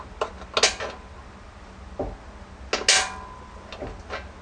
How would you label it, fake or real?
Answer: real